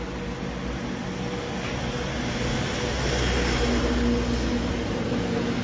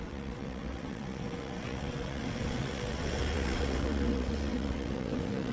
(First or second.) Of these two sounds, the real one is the first